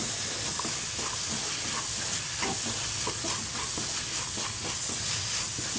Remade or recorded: recorded